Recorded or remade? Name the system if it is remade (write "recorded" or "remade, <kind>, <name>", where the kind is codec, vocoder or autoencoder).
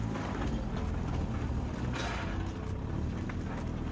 recorded